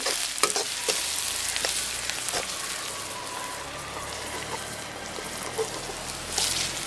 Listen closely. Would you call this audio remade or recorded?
recorded